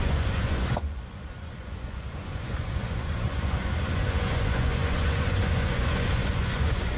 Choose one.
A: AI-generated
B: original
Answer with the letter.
A